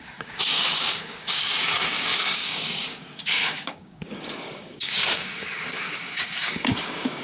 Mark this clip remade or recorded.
remade